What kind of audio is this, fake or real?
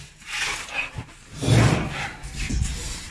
real